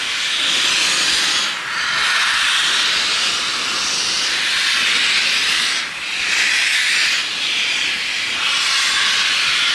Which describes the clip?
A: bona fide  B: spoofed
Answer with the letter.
A